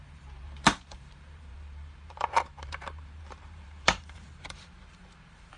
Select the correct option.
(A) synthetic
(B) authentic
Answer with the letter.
A